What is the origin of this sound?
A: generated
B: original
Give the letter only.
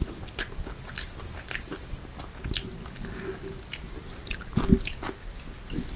B